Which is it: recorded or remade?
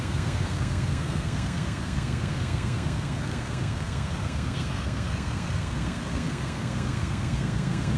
remade